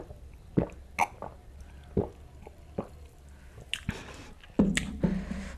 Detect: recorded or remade recorded